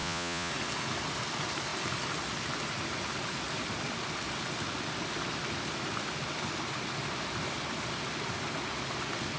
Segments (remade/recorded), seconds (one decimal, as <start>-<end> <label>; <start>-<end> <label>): 0.0-0.5 remade; 0.5-9.4 recorded